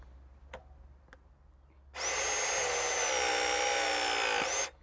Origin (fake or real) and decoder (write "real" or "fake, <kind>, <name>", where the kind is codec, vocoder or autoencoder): real